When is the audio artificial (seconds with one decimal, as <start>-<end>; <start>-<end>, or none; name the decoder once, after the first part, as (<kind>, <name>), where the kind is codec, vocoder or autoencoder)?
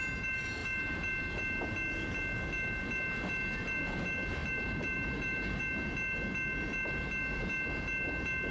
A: 4.4-5.6 (vocoder, BigVGAN v2)